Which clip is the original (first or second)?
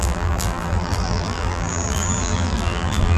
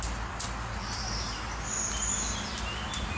second